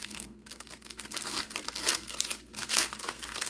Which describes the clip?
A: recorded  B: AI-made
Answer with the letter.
B